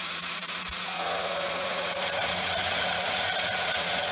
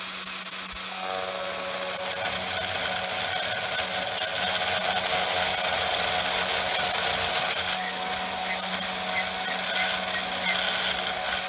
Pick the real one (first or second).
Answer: second